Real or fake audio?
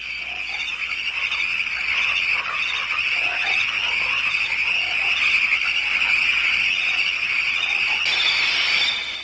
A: real